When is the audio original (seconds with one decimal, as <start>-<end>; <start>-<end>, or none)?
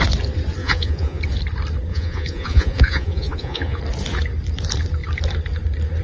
0.0-0.6; 1.2-1.9; 3.8-6.0